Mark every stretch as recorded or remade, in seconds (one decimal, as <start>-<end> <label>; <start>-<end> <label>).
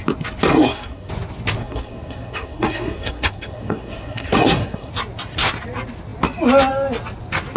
0.0-0.5 recorded; 0.5-1.1 remade; 1.1-1.6 recorded; 1.6-4.9 remade; 4.9-7.6 recorded